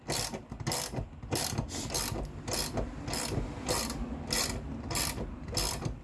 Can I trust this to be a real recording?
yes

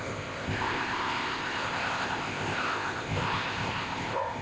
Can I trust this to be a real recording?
no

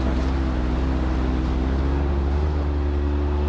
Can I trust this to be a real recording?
yes